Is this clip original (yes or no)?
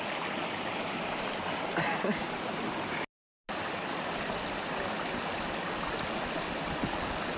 yes